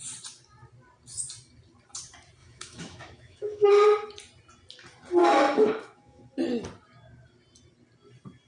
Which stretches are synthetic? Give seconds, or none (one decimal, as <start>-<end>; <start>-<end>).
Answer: 2.4-3.7; 5.2-6.2